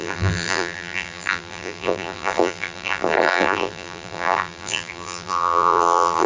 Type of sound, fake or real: fake